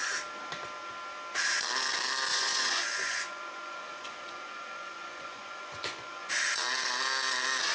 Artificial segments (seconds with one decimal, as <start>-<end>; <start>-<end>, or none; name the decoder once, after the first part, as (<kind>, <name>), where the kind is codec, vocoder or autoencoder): 2.3-6.3 (vocoder, Vocos)